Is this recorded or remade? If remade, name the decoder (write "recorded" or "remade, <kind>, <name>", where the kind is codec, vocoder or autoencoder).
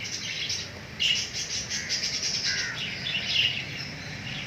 recorded